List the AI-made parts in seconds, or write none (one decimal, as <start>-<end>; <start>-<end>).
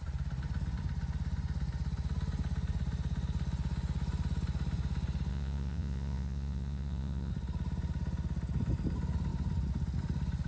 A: 5.3-7.3